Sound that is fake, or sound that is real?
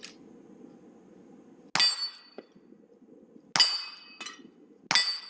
real